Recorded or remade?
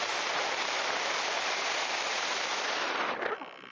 remade